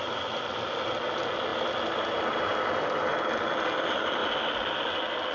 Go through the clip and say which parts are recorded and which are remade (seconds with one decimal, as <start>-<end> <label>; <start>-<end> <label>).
0.0-4.2 recorded; 4.2-4.7 remade; 4.7-5.3 recorded